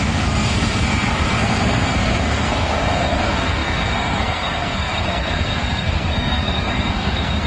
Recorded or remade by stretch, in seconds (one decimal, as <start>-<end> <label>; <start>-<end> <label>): 0.0-7.5 remade